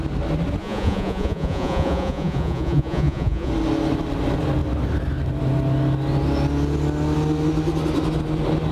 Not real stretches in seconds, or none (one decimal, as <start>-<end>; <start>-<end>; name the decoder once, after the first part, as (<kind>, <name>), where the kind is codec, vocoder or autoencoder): 0.6-3.5 (vocoder, Vocos)